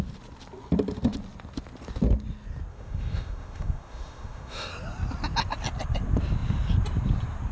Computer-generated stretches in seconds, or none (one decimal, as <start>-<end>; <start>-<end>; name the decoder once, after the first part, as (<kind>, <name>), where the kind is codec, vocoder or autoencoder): 2.7-4.7 (autoencoder, DAC-VAE)